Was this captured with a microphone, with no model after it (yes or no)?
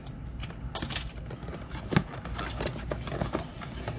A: yes